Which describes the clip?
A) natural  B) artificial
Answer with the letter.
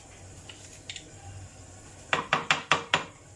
A